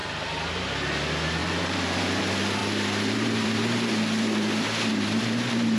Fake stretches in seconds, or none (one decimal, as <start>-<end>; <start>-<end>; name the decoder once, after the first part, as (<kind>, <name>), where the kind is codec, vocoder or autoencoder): 1.4-2.2 (vocoder, BigVGAN v2); 2.6-3.9; 4.9-5.8